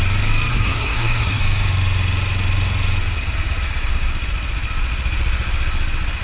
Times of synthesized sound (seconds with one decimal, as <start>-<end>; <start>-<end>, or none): 0.5-1.4